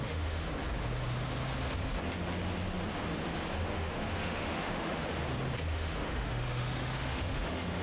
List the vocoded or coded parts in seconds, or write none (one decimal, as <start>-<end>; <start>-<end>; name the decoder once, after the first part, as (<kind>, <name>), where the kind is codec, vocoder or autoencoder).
0.0-0.5 (autoencoder, DAC-VAE); 3.7-4.9; 5.7-7.8